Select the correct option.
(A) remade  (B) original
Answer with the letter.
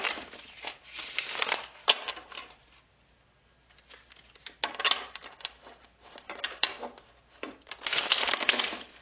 B